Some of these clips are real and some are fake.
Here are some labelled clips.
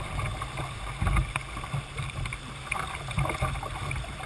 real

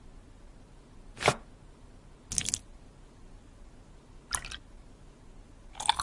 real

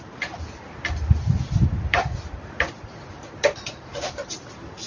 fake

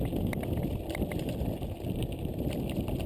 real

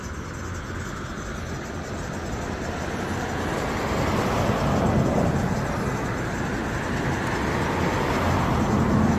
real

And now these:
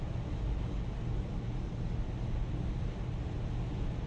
real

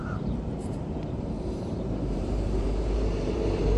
fake